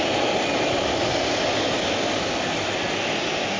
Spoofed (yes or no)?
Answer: no